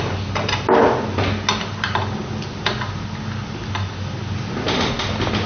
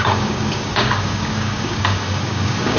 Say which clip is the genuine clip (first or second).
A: first